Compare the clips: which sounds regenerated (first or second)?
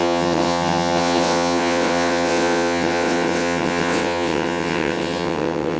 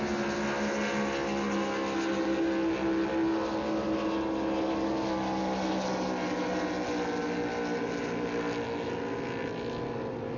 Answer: first